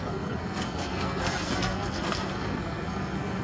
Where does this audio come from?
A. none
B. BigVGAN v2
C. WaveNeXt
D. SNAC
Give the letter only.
D